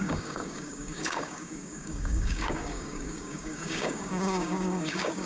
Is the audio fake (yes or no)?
yes